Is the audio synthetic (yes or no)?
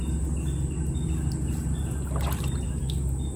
no